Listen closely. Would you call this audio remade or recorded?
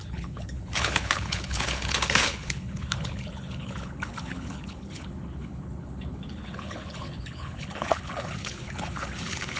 remade